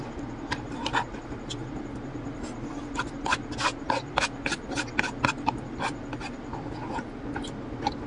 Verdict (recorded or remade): recorded